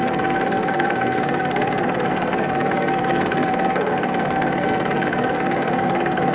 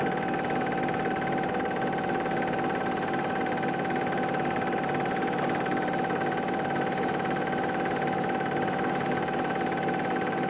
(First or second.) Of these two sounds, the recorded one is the second